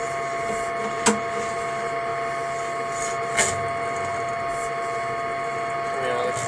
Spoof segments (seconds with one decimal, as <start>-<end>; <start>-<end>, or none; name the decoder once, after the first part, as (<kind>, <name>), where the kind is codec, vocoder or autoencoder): none